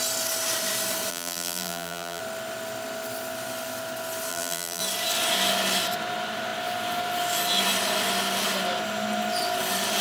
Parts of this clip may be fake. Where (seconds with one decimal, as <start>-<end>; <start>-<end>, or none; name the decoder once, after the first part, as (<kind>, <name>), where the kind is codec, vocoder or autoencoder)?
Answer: 1.1-2.2 (vocoder, BigVGAN v2); 4.3-4.8